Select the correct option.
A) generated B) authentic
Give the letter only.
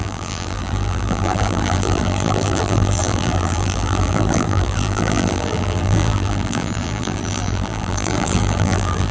A